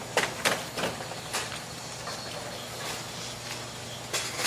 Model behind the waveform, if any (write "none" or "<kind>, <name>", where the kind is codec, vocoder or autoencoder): none